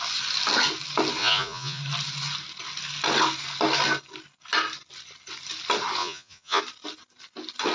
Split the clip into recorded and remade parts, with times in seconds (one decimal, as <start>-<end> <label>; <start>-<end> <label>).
0.0-1.2 recorded; 1.2-1.8 remade; 1.8-6.0 recorded; 6.0-6.6 remade; 6.6-7.7 recorded